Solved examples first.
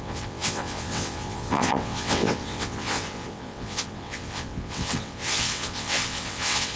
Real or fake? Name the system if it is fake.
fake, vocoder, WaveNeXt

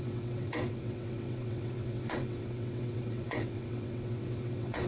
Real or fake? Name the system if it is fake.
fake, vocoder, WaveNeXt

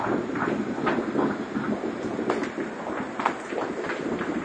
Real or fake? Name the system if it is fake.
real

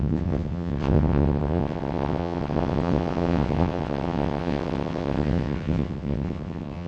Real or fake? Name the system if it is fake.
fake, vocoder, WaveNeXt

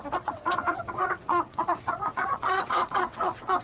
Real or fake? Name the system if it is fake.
fake, vocoder, WaveNeXt